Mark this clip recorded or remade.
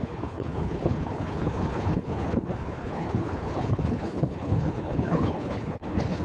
remade